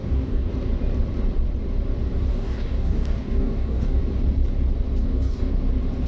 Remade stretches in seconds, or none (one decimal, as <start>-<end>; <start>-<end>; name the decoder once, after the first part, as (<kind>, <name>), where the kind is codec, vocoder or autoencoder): 0.0-0.5 (codec, DAC); 2.3-4.0; 5.0-5.5